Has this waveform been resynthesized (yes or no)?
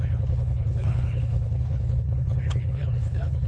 yes